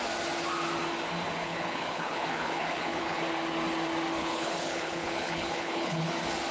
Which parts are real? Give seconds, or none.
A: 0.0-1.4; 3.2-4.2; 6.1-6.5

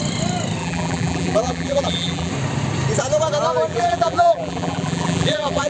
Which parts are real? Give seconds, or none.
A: 0.0-0.6; 2.3-3.7

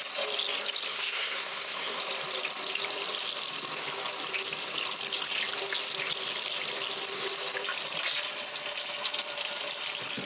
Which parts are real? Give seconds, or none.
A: 0.0-0.9; 2.0-10.3

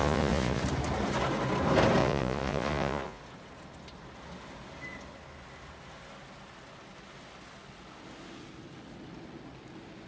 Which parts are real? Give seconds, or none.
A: 0.6-2.0; 3.2-10.1